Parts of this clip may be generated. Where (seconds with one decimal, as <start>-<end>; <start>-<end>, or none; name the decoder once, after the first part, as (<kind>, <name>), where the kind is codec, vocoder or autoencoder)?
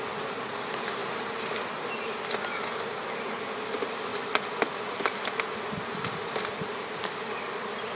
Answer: 1.0-1.7 (vocoder, BigVGAN v2)